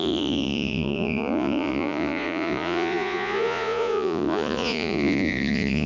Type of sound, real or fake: fake